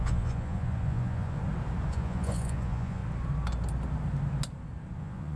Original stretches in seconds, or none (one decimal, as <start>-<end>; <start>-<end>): 1.4-1.9; 3.0-5.0

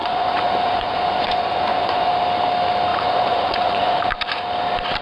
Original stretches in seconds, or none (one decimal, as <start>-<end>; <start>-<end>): 2.1-2.9; 4.1-5.0

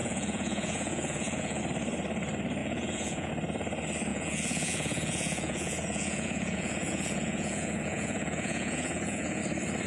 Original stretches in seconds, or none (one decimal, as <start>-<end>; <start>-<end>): 1.6-2.6; 3.3-4.1; 9.4-9.9

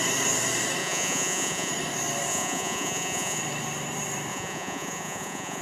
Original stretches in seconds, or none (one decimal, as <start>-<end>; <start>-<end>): 0.0-0.8; 1.7-2.3; 3.4-4.3

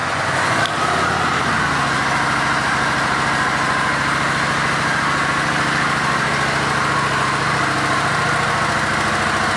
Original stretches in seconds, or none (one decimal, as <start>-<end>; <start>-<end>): 0.6-9.6